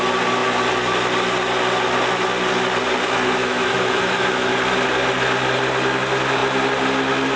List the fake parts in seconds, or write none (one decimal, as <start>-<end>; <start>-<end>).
3.4-4.5